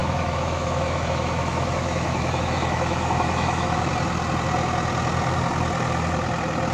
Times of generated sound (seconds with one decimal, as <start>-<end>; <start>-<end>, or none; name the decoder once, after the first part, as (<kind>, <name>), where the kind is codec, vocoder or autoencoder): 0.0-3.9 (autoencoder, DAC-VAE)